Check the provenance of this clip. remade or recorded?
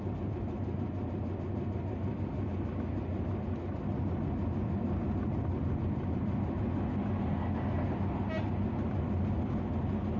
recorded